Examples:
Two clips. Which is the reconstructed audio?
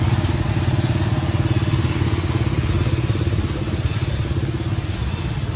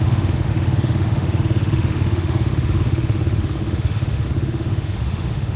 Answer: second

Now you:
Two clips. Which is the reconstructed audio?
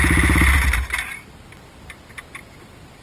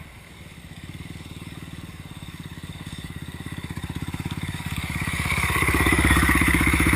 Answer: second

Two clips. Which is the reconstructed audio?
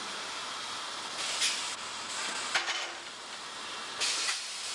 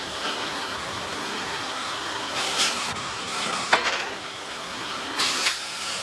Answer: second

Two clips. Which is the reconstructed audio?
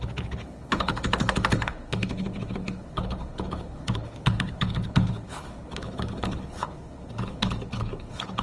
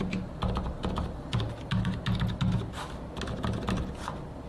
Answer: first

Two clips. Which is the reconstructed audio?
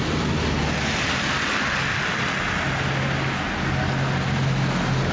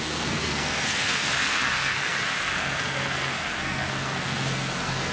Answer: second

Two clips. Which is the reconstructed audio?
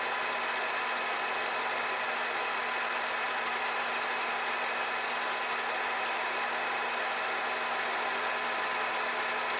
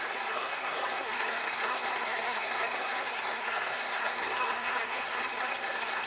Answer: second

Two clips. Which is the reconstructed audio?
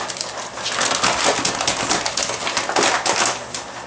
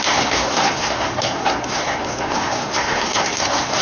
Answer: second